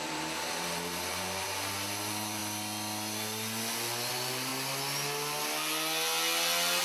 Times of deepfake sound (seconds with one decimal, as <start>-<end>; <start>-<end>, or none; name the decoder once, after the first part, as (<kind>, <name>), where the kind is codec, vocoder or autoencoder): 0.0-2.4 (vocoder, BigVGAN v2); 4.1-4.5

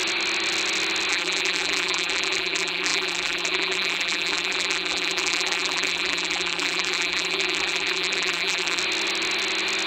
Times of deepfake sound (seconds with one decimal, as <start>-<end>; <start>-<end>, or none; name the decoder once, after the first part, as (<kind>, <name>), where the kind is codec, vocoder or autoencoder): 1.1-8.8 (vocoder, BigVGAN v2)